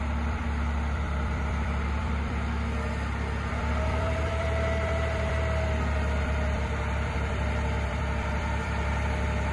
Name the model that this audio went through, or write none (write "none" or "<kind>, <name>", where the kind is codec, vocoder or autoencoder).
vocoder, BigVGAN v2